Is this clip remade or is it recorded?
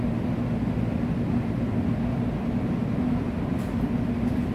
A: recorded